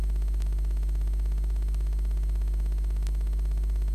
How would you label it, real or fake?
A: real